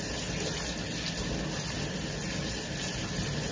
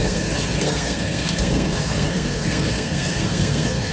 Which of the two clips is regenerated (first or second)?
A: second